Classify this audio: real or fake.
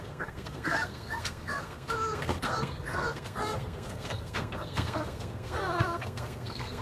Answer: fake